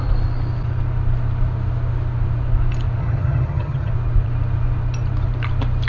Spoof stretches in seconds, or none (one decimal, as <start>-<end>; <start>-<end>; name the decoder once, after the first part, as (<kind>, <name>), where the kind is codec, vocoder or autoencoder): 3.0-3.9 (vocoder, HiFi-GAN)